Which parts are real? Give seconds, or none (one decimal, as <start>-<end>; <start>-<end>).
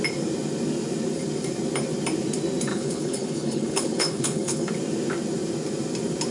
0.0-2.7; 4.7-6.3